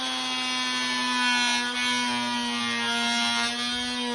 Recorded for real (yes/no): yes